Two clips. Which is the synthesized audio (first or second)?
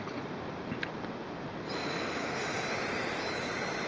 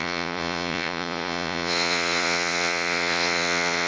second